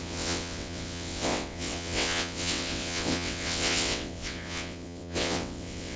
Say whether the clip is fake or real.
fake